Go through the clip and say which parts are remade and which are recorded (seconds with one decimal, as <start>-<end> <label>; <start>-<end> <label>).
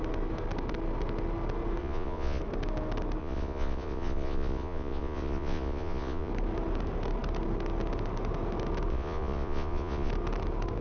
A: 0.0-1.8 recorded; 1.8-2.4 remade; 2.4-3.2 recorded; 3.2-6.3 remade; 6.3-8.9 recorded; 8.9-10.1 remade; 10.1-10.8 recorded